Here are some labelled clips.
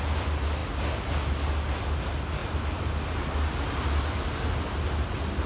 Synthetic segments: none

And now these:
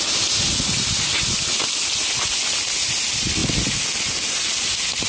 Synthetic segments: none

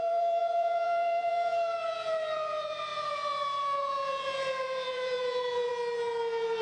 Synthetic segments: 0.0-5.7 (vocoder, Vocos)